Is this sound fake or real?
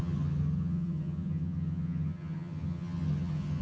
fake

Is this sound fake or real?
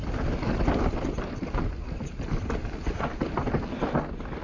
real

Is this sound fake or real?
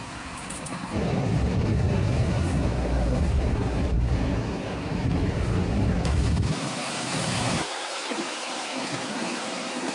fake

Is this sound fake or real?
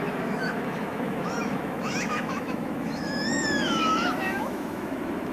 fake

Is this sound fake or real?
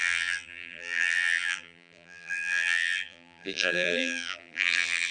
fake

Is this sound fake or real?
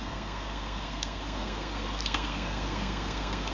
fake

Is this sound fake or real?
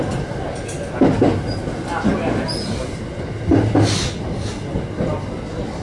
real